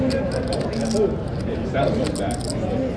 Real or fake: real